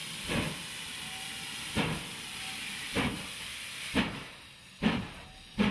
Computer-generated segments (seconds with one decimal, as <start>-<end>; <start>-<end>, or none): 0.0-5.7